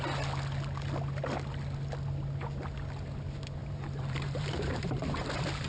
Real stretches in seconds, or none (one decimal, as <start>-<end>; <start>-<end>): 0.0-3.6